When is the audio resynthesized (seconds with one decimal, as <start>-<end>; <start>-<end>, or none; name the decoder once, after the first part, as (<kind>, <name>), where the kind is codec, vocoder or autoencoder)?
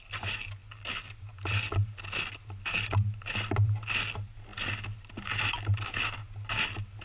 none